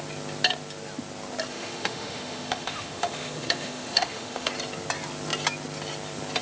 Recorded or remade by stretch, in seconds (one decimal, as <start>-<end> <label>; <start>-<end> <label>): 0.0-1.5 recorded; 1.5-4.5 remade; 4.5-6.4 recorded